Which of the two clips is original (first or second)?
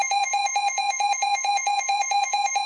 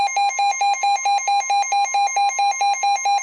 second